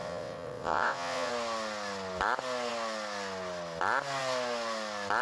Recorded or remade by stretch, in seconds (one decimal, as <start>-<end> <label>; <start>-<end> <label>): 0.0-1.3 remade; 1.3-5.2 recorded